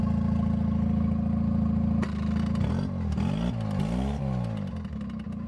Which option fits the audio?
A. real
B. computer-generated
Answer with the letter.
A